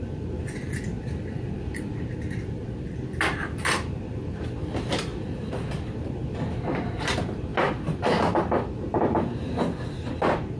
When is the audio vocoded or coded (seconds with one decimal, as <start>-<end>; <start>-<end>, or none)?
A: 0.0-6.2; 6.9-7.5